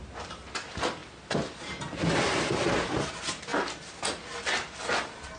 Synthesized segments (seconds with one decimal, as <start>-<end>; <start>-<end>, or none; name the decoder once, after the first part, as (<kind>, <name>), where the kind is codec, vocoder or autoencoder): none